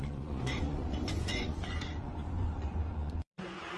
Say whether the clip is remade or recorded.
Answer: remade